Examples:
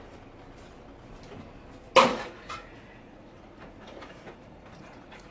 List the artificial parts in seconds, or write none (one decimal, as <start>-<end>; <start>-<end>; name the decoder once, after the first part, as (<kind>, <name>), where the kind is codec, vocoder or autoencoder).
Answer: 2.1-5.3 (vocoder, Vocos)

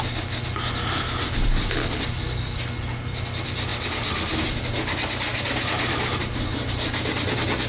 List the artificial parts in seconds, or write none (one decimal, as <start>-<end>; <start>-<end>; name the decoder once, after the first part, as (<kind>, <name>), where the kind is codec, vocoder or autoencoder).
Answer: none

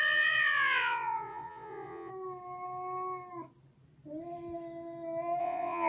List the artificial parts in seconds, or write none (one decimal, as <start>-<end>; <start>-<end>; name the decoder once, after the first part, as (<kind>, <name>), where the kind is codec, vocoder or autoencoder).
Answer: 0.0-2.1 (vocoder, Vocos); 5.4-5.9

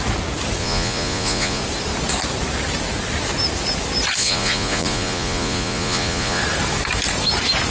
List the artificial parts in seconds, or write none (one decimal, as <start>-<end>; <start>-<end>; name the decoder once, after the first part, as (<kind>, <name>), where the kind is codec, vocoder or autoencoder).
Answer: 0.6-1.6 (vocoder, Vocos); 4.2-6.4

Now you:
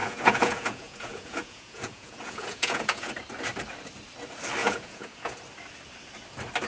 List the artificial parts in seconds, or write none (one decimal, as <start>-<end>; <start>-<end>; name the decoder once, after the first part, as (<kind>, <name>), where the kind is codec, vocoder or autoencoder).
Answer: 0.0-3.1 (vocoder, Vocos); 4.6-5.4

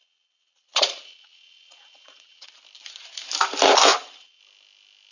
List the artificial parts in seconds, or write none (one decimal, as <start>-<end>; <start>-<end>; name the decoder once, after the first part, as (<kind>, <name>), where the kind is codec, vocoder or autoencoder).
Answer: 0.0-2.5 (vocoder, Vocos); 3.9-4.4